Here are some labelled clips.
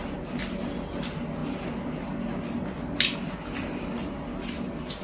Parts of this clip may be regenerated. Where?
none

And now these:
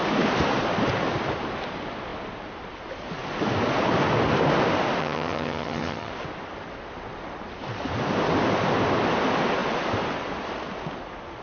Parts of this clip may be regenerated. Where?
5.0-6.1 (vocoder, HiFi-GAN)

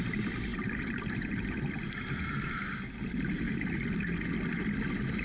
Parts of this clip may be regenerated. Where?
none

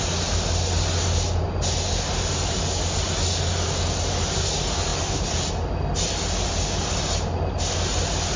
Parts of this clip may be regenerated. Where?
none

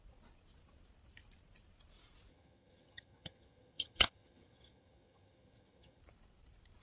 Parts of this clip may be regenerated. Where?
2.3-6.0 (vocoder, HiFi-GAN)